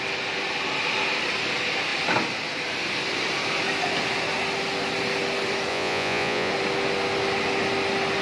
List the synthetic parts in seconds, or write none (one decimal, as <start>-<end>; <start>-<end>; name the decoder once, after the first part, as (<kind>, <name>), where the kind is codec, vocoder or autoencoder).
5.7-6.5 (vocoder, Vocos)